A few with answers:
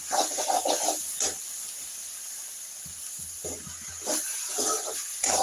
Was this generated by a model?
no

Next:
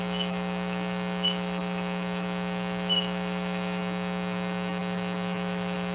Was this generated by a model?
yes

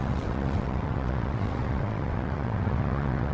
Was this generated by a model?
yes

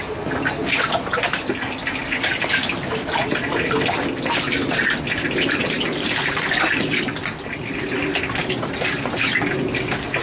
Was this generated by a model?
no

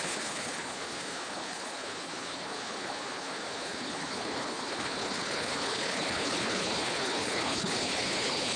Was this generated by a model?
yes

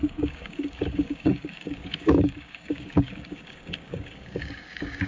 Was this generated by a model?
yes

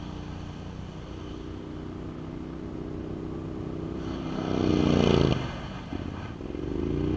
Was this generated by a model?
no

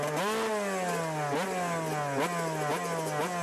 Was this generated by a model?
no